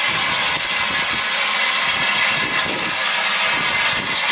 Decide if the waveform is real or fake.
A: real